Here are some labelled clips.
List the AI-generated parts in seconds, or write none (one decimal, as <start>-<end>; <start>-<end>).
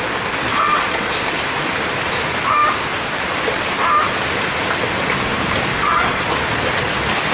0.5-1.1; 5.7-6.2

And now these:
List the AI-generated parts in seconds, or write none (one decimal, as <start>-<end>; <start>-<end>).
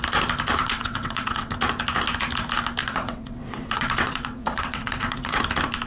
0.6-1.5; 2.8-5.4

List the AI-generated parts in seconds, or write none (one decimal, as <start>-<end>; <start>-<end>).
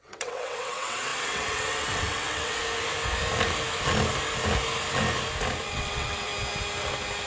0.0-2.6; 5.7-6.3